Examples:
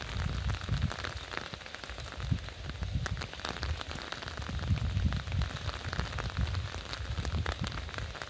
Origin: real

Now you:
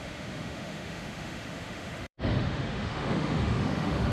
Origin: fake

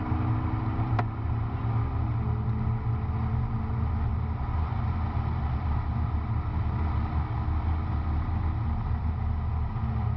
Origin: real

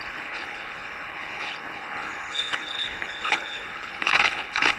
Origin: fake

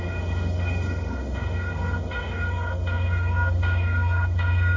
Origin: fake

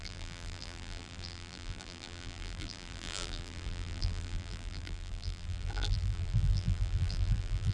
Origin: fake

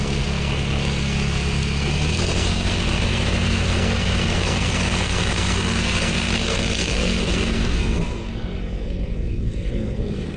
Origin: fake